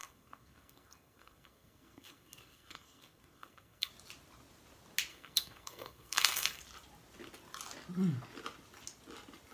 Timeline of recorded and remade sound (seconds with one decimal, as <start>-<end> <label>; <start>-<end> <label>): 0.0-3.9 remade; 3.9-5.1 recorded; 5.1-6.6 remade; 6.6-9.5 recorded